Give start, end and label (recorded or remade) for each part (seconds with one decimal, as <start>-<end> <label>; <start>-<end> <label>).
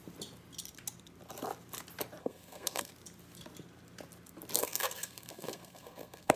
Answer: 0.0-2.2 recorded; 2.2-2.9 remade; 2.9-4.6 recorded; 4.6-6.4 remade